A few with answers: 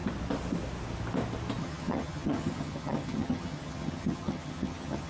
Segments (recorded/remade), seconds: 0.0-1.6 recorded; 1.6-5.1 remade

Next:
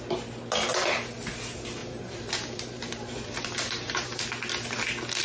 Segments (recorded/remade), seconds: 0.0-1.8 recorded; 1.8-4.2 remade; 4.2-5.2 recorded

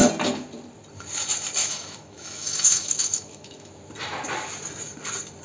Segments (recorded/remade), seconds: 0.0-1.6 recorded; 1.6-3.7 remade; 3.7-5.4 recorded

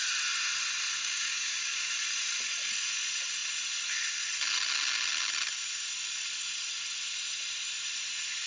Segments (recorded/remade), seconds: 0.0-1.0 recorded; 1.0-1.9 remade; 1.9-8.5 recorded

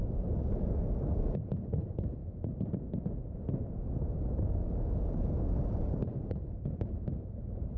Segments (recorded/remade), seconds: 0.0-1.5 recorded; 1.5-2.2 remade; 2.2-5.9 recorded; 5.9-7.8 remade

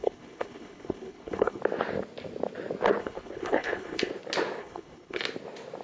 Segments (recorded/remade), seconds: 0.0-1.6 remade; 1.6-3.0 recorded; 3.0-4.1 remade; 4.1-4.6 recorded; 4.6-5.2 remade; 5.2-5.8 recorded